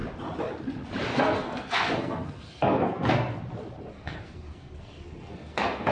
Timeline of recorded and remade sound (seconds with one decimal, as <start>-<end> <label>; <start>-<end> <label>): 0.0-1.1 recorded; 1.1-3.4 remade; 3.4-3.9 recorded; 3.9-5.9 remade